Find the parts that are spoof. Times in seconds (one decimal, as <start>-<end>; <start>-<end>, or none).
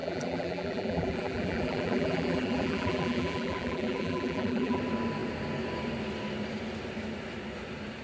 0.0-4.8